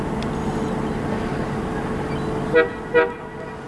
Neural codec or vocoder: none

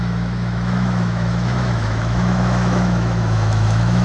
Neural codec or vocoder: autoencoder, DAC-VAE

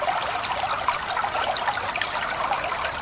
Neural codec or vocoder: none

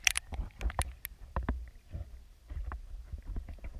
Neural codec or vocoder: none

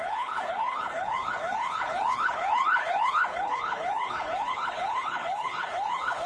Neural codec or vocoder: codec, HILCodec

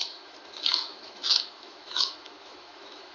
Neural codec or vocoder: autoencoder, DAC-VAE